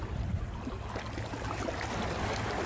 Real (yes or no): yes